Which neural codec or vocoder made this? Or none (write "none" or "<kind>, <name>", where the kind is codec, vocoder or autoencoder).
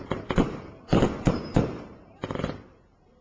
vocoder, BigVGAN v2